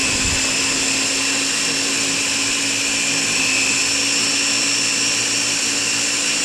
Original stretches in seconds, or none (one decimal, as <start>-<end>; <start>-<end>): 0.0-6.4